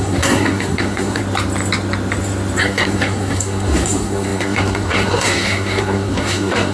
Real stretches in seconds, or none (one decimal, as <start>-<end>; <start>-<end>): 1.2-2.6